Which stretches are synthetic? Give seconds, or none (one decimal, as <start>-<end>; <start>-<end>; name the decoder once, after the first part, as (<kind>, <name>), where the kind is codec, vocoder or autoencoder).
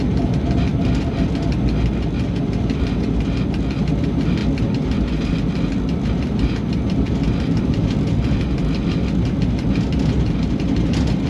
none